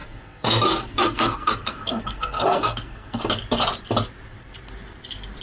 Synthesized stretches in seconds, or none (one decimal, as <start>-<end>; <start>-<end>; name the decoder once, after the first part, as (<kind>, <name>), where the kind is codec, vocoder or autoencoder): 0.0-3.2 (codec, SNAC)